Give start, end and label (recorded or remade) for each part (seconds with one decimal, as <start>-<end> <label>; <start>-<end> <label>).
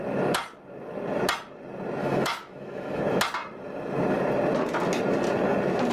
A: 0.0-2.0 recorded; 2.0-3.0 remade; 3.0-5.9 recorded